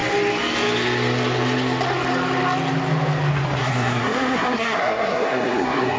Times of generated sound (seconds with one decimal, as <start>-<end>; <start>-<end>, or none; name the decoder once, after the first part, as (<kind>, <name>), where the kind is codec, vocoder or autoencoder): 3.6-6.0 (codec, SNAC)